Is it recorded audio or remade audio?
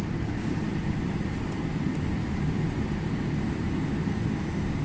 recorded